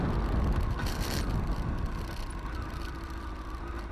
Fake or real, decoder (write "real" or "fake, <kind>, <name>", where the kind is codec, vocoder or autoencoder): real